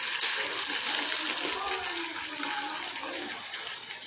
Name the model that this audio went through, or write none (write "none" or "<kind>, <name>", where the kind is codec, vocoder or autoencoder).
none